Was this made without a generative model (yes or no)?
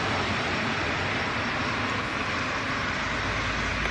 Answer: yes